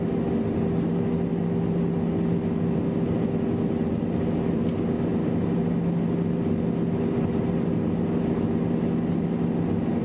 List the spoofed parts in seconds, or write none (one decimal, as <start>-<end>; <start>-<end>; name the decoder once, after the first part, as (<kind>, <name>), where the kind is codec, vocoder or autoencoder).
none